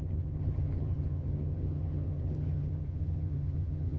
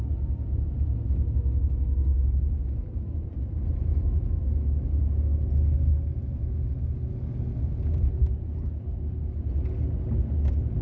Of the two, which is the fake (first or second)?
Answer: first